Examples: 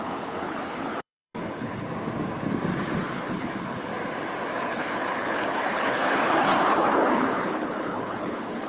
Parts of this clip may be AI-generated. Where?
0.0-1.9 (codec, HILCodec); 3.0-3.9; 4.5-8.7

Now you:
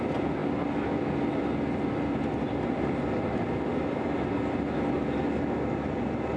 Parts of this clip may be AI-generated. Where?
none

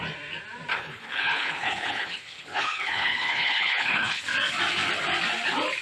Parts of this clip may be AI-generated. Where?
0.7-4.2 (codec, HILCodec)

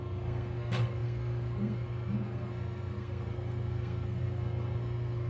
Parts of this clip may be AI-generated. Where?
0.0-5.3 (codec, SNAC)

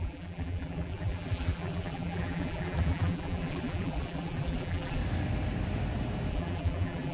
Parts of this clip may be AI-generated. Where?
0.0-5.0 (vocoder, BigVGAN v2); 6.3-7.1

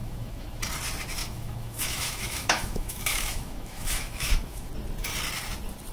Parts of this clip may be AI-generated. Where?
0.0-0.6 (autoencoder, DAC-VAE); 1.2-4.7

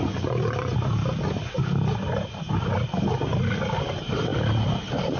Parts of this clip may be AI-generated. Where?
none